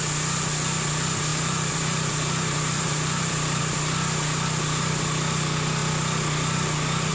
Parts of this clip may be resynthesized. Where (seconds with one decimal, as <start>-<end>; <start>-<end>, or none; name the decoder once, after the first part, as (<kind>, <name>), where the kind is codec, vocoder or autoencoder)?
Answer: 1.3-3.6 (vocoder, BigVGAN v2)